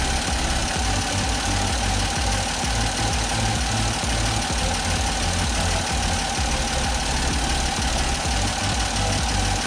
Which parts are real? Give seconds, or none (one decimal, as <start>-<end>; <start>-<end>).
0.0-9.7